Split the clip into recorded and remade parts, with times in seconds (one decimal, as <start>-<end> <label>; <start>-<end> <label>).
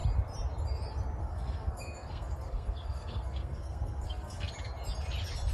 0.0-1.2 recorded; 1.2-4.5 remade; 4.5-5.5 recorded